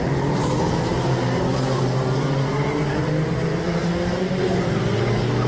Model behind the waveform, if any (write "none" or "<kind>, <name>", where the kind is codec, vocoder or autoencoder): none